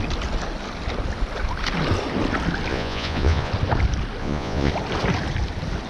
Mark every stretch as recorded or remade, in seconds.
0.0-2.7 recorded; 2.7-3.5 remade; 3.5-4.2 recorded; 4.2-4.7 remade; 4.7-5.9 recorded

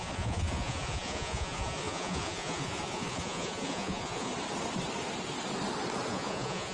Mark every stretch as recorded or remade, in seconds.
0.0-4.3 remade; 4.3-6.1 recorded; 6.1-6.7 remade

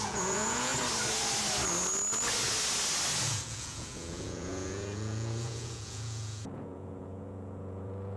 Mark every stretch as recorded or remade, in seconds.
0.0-0.7 remade; 0.7-3.2 recorded; 3.2-8.2 remade

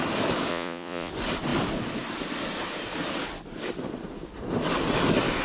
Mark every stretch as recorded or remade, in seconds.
0.0-0.5 recorded; 0.5-1.1 remade; 1.1-5.4 recorded

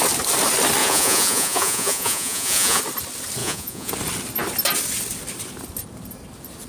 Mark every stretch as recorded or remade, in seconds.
0.0-0.8 recorded; 0.8-2.8 remade; 2.8-3.4 recorded; 3.4-3.9 remade; 3.9-6.7 recorded

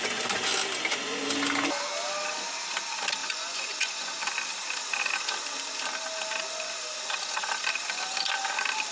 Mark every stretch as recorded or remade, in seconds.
0.0-3.2 recorded; 3.2-4.3 remade; 4.3-8.9 recorded